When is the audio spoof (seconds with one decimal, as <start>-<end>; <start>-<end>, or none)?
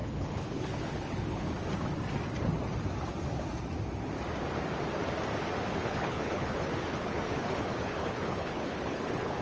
0.0-1.5; 5.8-9.4